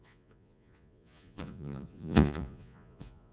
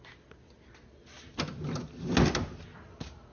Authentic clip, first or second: second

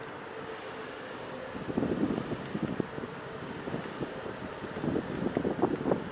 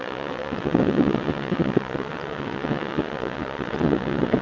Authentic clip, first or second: first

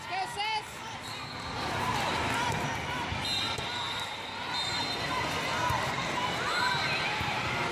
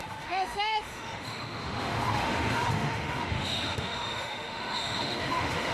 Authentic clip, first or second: first